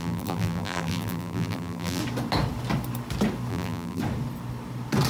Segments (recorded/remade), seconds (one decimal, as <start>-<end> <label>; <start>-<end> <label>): 0.0-2.0 remade; 2.0-3.5 recorded; 3.5-4.0 remade; 4.0-5.1 recorded